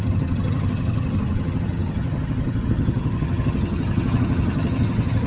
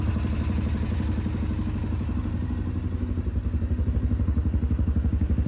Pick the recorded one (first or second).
second